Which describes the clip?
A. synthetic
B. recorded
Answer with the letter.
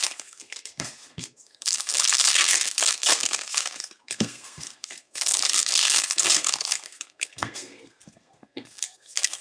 A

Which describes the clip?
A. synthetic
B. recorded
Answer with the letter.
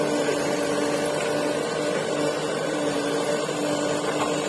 B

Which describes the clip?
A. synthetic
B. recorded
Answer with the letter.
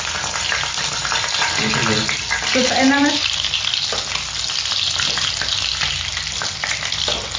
B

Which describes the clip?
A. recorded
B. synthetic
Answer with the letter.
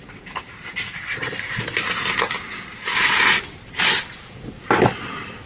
A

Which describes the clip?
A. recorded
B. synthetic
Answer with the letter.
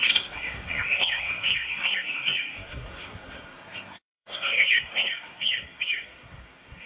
B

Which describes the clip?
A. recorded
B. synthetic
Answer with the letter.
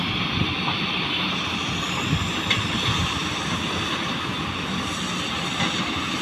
A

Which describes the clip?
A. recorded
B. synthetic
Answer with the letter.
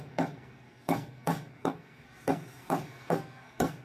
B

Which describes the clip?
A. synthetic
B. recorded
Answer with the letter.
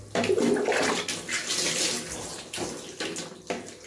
B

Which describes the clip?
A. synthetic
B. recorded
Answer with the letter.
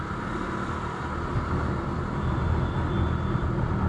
B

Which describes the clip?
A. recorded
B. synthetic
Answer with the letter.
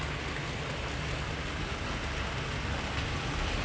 A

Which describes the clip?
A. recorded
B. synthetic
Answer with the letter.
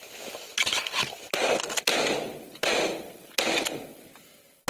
A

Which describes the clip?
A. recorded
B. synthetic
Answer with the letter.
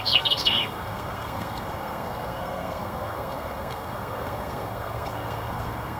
B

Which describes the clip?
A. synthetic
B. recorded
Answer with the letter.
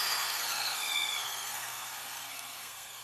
A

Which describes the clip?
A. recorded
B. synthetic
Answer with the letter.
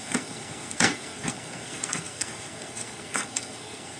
B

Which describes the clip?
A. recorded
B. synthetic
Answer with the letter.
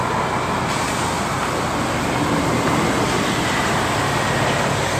A